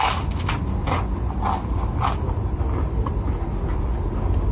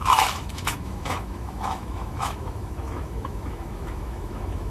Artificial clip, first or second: second